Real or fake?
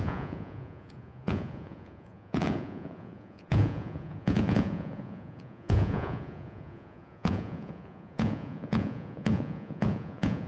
fake